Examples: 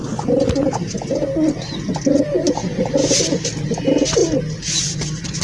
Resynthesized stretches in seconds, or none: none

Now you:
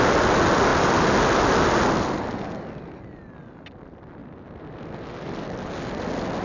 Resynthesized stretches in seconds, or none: none

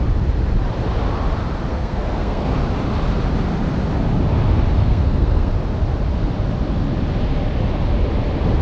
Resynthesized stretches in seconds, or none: 1.7-2.5 (codec, SNAC); 4.8-5.5

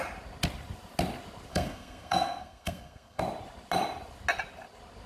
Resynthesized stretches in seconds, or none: 1.5-3.2 (codec, SNAC)

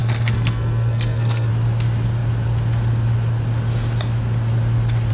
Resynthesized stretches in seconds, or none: 0.0-1.5 (codec, SNAC)

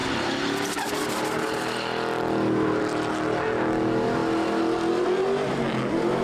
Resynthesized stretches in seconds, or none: none

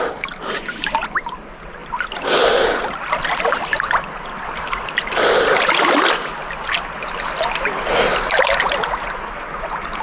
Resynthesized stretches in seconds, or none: 1.8-2.8 (vocoder, BigVGAN v2); 4.3-6.3

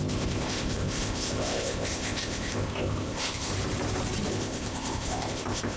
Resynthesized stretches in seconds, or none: 0.0-3.5 (codec, ZipCodec); 4.3-5.8